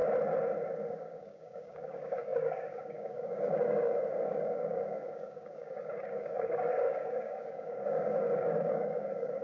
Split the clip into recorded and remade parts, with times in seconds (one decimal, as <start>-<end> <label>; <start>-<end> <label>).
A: 0.0-0.9 recorded; 0.9-9.4 remade